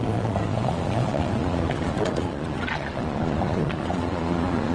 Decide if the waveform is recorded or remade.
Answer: remade